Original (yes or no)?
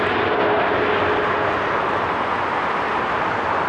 yes